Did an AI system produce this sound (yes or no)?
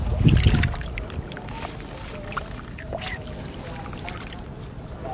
no